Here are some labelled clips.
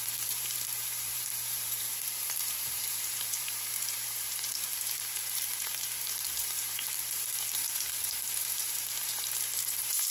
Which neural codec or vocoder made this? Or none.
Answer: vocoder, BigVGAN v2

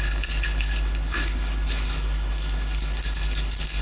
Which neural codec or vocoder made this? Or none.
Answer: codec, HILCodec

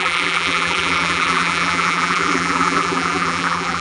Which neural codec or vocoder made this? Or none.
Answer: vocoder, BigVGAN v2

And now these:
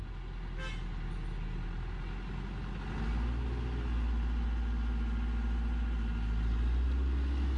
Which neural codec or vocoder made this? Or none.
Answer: none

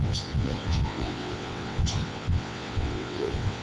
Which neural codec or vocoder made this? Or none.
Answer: vocoder, WaveNeXt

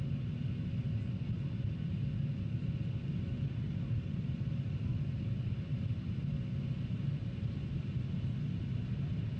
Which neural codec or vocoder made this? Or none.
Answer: none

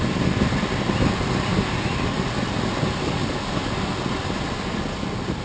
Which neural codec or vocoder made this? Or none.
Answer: none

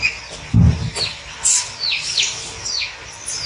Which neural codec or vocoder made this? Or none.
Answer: none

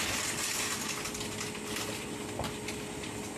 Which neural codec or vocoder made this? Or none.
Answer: none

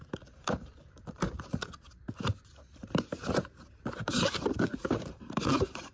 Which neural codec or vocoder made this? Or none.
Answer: vocoder, BigVGAN v2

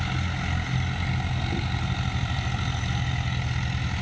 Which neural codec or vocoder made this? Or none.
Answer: none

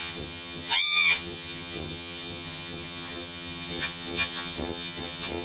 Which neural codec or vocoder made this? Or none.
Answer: vocoder, HiFi-GAN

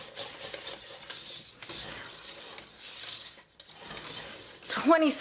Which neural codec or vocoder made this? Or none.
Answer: none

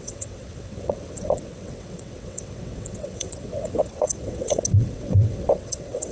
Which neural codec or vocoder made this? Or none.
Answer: vocoder, WaveNeXt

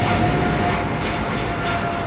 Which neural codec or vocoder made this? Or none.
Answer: none